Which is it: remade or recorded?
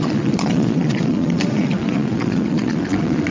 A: remade